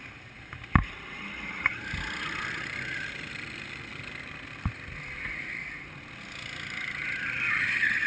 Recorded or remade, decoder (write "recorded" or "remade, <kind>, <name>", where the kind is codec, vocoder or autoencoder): recorded